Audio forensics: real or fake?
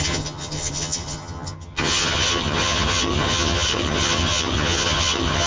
fake